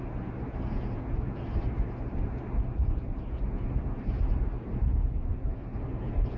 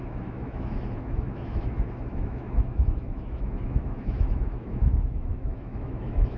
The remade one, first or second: second